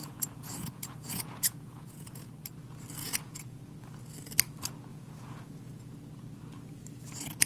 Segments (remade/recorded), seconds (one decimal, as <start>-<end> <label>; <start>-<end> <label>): 0.0-2.3 remade; 2.3-3.0 recorded; 3.0-3.6 remade; 3.6-4.9 recorded; 4.9-5.9 remade; 5.9-7.5 recorded